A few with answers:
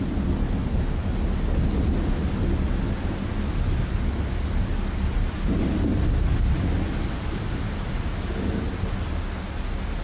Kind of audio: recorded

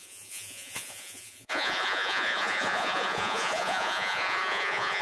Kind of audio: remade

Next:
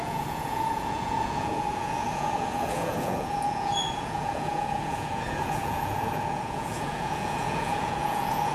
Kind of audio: remade